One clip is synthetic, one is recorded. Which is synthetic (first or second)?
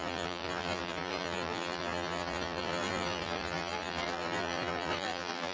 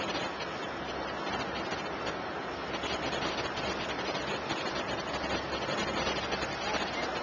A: first